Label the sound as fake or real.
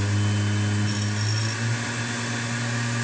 real